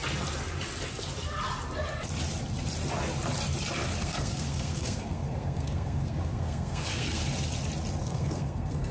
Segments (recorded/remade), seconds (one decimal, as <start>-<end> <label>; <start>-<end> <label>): 0.0-4.0 recorded; 4.0-7.2 remade; 7.2-8.0 recorded; 8.0-8.9 remade

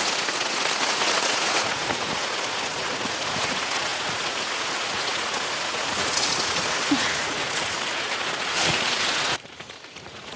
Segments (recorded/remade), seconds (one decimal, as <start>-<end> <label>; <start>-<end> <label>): 0.0-10.4 remade

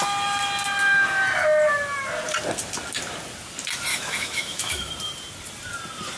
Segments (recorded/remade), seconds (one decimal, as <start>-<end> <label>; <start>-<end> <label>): 0.0-3.9 recorded; 3.9-4.9 remade; 4.9-6.2 recorded